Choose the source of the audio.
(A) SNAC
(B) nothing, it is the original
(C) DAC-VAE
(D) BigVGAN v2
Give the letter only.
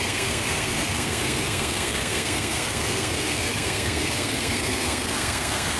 A